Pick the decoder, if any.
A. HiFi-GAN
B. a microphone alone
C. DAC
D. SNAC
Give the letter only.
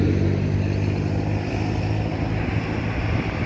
B